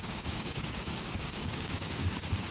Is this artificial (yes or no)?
yes